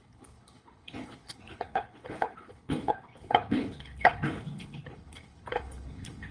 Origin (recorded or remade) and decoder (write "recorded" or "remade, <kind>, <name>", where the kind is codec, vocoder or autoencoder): remade, codec, HILCodec